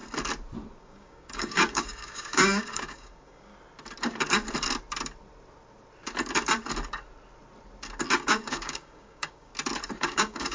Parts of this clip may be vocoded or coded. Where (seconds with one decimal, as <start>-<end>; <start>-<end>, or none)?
0.8-3.5; 8.1-9.5; 10.0-10.5